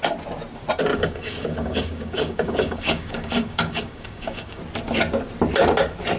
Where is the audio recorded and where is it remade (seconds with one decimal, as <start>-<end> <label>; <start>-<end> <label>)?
0.0-0.9 recorded; 0.9-4.6 remade; 4.6-6.2 recorded